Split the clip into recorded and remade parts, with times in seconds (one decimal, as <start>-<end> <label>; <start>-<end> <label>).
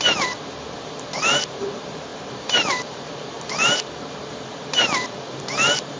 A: 0.0-6.0 remade